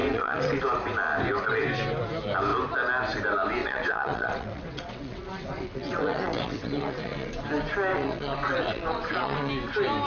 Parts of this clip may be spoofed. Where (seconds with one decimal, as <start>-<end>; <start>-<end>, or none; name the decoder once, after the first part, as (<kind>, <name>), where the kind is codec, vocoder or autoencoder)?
0.0-0.6 (vocoder, WaveNeXt); 3.6-7.4; 7.9-9.5